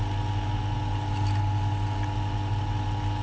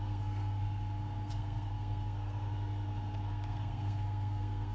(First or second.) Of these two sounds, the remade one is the second